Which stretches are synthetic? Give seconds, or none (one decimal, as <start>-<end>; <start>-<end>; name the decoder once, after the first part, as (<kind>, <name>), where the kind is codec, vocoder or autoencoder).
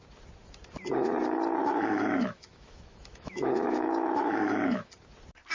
1.6-4.9 (autoencoder, DAC-VAE)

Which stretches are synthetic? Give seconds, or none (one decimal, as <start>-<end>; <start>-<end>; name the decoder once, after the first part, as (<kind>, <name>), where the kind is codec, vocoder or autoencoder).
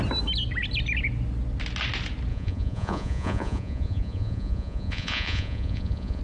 2.3-6.2 (vocoder, Vocos)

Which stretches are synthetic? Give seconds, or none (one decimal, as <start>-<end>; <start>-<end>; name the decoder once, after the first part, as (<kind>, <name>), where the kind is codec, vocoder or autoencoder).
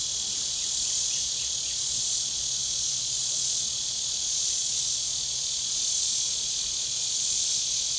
2.6-3.2 (vocoder, BigVGAN v2)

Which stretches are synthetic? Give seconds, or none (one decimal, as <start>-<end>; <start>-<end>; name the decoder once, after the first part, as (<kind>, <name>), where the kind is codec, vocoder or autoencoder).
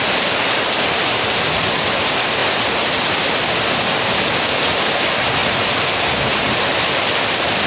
0.0-5.4 (vocoder, BigVGAN v2); 7.2-7.7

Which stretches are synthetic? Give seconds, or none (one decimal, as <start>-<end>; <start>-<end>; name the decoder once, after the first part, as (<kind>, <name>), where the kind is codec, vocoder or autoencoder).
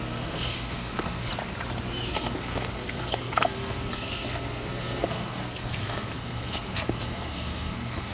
0.0-1.3 (codec, SNAC); 2.1-8.1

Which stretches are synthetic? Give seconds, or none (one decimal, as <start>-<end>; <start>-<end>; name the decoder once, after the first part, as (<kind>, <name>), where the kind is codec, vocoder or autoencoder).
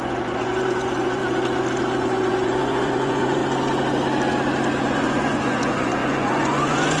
0.0-1.2 (vocoder, Vocos); 2.0-3.4; 4.8-7.0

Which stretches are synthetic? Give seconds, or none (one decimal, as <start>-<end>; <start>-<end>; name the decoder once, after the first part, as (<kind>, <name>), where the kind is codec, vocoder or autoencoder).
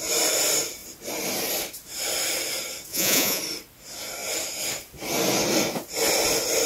2.9-3.4 (vocoder, Vocos)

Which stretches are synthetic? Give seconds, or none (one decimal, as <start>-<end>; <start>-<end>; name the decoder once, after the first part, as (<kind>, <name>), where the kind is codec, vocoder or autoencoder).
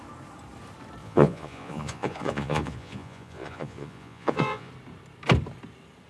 1.0-4.7 (vocoder, Vocos)